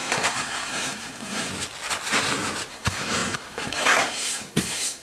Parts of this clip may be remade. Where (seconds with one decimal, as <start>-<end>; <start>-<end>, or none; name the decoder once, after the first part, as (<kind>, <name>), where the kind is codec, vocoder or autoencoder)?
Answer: 0.0-1.5 (codec, SNAC); 2.7-5.0